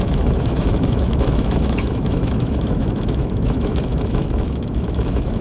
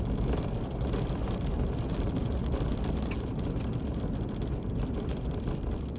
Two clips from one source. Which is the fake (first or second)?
first